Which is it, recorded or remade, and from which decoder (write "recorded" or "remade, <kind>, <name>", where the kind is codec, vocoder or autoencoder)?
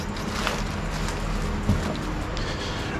recorded